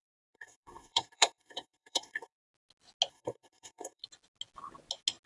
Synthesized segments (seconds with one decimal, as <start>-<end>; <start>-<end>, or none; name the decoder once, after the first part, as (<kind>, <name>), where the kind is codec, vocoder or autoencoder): 0.0-2.4 (codec, SNAC); 3.1-4.0

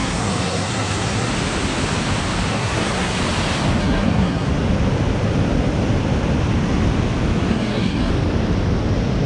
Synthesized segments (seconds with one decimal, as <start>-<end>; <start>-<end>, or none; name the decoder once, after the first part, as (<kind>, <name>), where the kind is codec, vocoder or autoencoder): 0.0-1.3 (codec, SNAC); 2.5-3.2; 3.8-4.5; 7.5-8.1

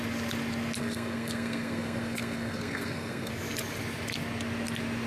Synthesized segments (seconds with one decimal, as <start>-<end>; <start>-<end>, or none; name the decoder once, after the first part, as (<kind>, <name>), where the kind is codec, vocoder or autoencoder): 0.8-3.3 (codec, SNAC)

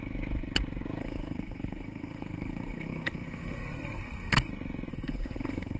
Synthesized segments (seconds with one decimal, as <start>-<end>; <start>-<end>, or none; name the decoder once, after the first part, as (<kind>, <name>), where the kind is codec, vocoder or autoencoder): 1.0-4.5 (codec, SNAC); 4.9-5.8

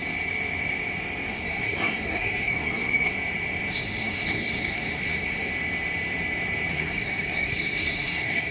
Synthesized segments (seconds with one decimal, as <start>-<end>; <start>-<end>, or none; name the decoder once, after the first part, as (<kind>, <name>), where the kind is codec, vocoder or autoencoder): 1.3-3.1 (codec, SNAC); 3.7-5.5; 6.7-8.5

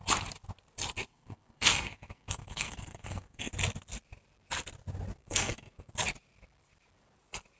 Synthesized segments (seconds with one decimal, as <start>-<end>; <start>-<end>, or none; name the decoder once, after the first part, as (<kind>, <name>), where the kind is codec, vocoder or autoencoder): 1.1-3.5 (codec, SNAC); 5.2-5.9